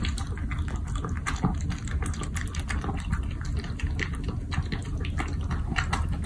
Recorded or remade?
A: recorded